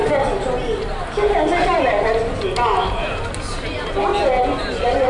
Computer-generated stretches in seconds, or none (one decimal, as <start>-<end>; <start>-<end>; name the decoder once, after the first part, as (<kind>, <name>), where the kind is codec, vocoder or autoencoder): none